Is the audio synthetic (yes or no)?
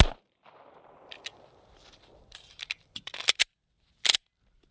yes